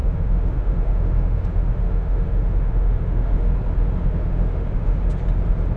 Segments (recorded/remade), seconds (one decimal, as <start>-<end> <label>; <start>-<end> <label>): 0.0-3.5 remade; 3.5-4.0 recorded; 4.0-5.2 remade; 5.2-5.8 recorded